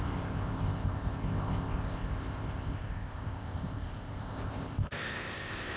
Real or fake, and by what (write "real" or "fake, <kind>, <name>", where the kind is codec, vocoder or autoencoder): fake, codec, ZipCodec